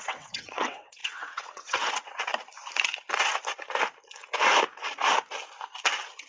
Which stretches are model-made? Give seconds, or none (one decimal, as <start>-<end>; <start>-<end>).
0.0-2.3